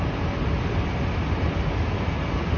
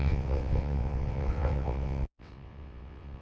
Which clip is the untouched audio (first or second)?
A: first